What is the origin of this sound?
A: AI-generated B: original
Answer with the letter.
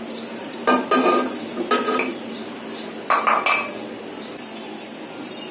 B